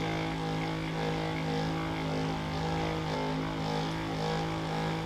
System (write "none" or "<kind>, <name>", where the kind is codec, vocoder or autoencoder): none